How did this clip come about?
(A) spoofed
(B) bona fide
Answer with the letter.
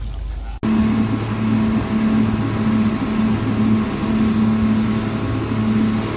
B